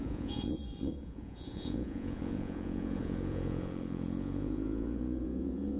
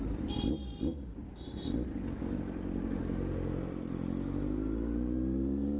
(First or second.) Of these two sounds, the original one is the second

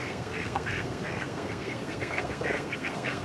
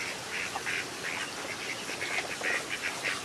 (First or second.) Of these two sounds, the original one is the second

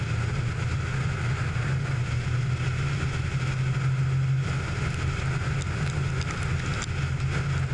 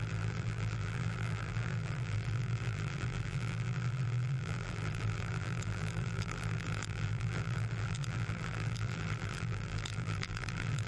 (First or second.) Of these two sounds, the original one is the first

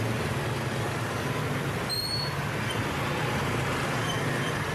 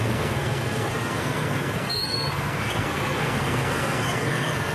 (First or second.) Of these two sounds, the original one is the first